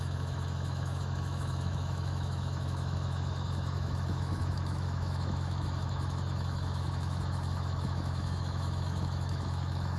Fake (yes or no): yes